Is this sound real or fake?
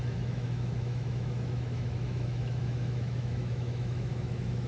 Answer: fake